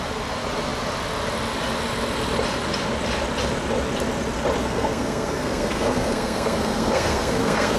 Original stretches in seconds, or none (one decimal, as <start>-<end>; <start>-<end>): 0.0-4.6